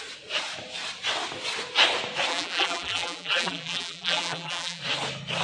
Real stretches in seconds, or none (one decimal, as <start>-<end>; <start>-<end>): 0.0-2.3; 4.8-5.4